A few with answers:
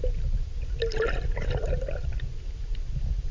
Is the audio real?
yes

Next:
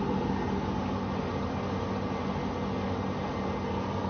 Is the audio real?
yes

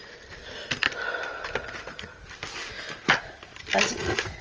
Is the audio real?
yes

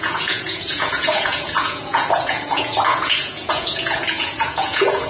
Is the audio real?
no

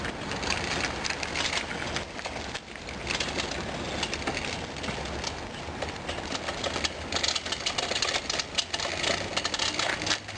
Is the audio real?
yes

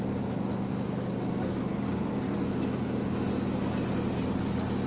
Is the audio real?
yes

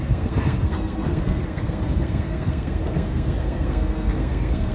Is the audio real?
no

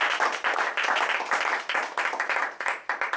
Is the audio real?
yes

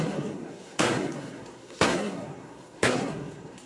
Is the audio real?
no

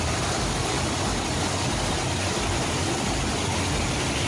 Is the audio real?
yes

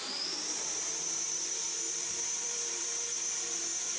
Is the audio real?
no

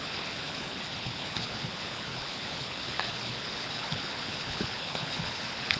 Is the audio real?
no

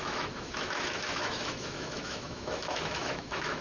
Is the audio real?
no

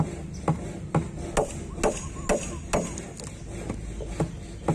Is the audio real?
yes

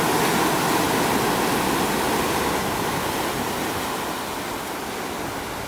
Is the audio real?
yes